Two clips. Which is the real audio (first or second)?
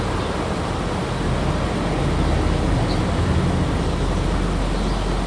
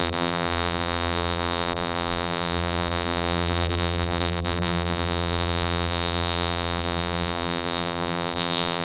first